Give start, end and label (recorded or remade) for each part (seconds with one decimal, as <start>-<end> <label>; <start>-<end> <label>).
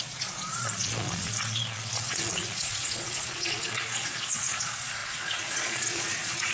0.0-6.5 remade